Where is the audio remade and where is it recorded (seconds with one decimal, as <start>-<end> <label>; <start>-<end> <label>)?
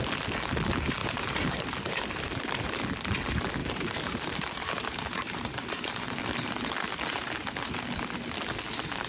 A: 0.0-1.0 recorded; 1.0-2.8 remade; 2.8-3.6 recorded; 3.6-6.2 remade; 6.2-9.1 recorded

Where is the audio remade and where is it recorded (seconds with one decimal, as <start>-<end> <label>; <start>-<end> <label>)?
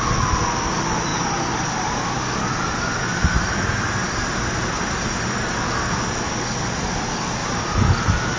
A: 0.0-1.1 recorded; 1.1-5.6 remade; 5.6-7.4 recorded; 7.4-8.0 remade; 8.0-8.4 recorded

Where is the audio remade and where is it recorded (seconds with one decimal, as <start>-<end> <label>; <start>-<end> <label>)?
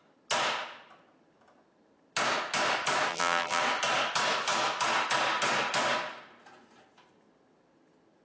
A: 0.0-3.1 recorded; 3.1-3.6 remade; 3.6-8.2 recorded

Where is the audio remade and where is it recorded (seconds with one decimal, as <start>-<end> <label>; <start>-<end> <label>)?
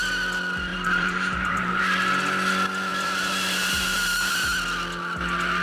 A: 0.0-0.7 recorded; 0.7-1.8 remade; 1.8-2.9 recorded; 2.9-4.3 remade; 4.3-5.6 recorded